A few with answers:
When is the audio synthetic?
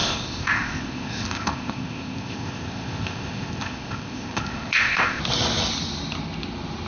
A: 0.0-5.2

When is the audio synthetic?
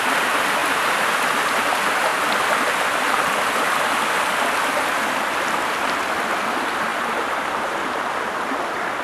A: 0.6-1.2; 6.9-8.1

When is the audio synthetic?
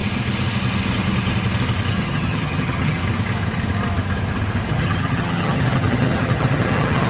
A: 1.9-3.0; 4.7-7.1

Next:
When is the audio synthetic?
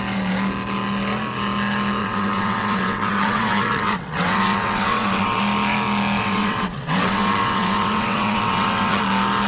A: 2.0-5.4; 6.2-9.0